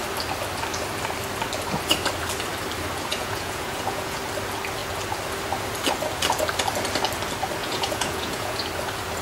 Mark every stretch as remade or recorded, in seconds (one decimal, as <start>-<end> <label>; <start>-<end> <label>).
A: 0.0-3.1 recorded; 3.1-4.2 remade; 4.2-7.6 recorded; 7.6-8.6 remade; 8.6-9.2 recorded